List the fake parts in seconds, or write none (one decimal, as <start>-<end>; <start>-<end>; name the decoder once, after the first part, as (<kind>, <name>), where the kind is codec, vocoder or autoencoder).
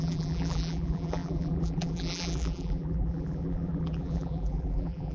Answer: 0.0-5.1 (vocoder, BigVGAN v2)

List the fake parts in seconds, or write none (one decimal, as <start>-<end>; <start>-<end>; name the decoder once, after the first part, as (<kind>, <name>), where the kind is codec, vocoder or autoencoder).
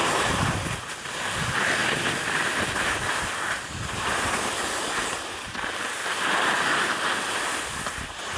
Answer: none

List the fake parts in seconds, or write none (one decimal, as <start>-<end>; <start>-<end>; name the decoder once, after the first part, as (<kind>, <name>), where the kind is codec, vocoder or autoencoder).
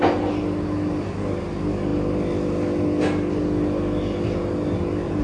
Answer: none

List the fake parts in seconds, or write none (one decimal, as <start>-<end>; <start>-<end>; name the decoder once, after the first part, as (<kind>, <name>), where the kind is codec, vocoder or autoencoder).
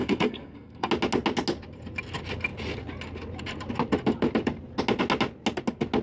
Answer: 0.0-0.9 (codec, SNAC)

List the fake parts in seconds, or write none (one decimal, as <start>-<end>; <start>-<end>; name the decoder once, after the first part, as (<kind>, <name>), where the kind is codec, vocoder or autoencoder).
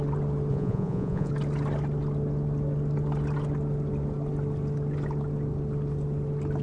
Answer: 0.5-1.3 (vocoder, Vocos)